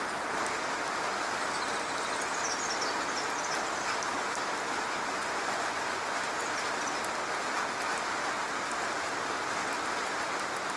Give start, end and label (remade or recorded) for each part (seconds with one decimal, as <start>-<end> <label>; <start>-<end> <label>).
0.0-5.2 recorded; 5.2-6.2 remade; 6.2-10.8 recorded